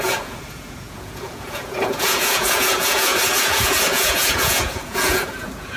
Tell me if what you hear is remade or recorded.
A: remade